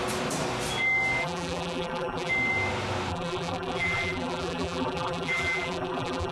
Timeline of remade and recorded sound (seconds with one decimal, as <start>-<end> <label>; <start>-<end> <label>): 0.0-1.2 recorded; 1.2-2.3 remade; 2.3-3.1 recorded; 3.1-6.3 remade